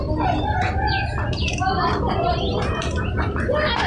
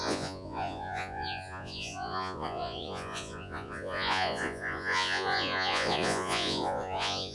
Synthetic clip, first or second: second